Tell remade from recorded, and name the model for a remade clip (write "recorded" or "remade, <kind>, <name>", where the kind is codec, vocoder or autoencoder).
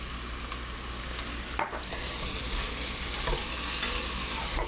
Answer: recorded